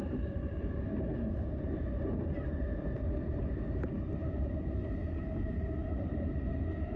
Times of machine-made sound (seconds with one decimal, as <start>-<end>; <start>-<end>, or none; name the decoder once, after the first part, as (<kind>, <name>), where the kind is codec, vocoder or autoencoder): 0.5-1.8 (vocoder, BigVGAN v2); 4.8-6.5